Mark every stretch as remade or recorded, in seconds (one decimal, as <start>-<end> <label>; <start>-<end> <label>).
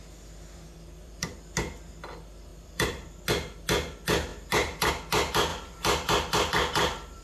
0.0-0.7 recorded; 0.7-1.3 remade; 1.3-2.5 recorded; 2.5-3.2 remade; 3.2-4.3 recorded; 4.3-4.9 remade; 4.9-5.5 recorded; 5.5-7.2 remade